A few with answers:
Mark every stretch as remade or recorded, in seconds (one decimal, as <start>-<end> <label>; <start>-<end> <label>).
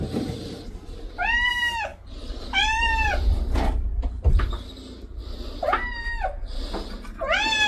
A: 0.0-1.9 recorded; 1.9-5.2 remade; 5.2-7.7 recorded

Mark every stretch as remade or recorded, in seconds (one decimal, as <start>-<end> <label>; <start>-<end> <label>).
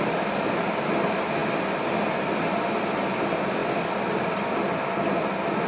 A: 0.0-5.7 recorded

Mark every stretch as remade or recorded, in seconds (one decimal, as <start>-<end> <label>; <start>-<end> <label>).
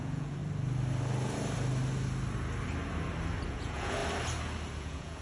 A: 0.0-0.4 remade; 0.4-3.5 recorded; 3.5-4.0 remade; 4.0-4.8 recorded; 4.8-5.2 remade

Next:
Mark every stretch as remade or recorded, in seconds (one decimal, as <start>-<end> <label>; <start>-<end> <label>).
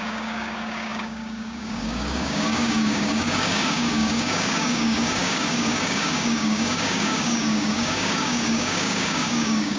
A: 0.0-9.8 remade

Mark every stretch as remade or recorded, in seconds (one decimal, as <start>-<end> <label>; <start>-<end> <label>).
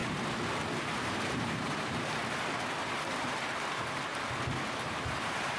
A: 0.0-1.0 recorded; 1.0-2.2 remade; 2.2-3.0 recorded; 3.0-4.1 remade; 4.1-4.9 recorded; 4.9-5.6 remade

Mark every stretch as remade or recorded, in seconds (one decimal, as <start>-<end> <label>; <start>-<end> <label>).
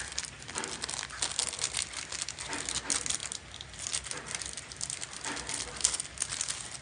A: 0.0-6.8 recorded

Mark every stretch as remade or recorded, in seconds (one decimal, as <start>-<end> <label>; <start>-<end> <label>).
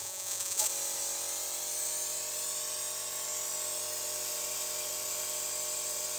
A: 0.0-0.7 remade; 0.7-6.2 recorded